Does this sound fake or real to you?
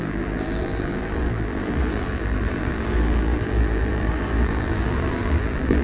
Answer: fake